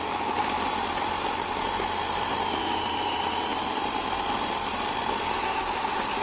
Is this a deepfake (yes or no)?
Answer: no